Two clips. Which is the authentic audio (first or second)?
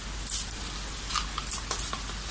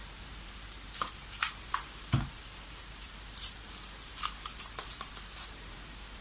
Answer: first